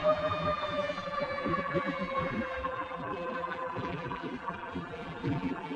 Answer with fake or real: fake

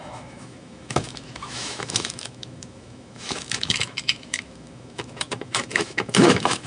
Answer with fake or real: fake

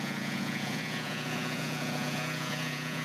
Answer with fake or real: fake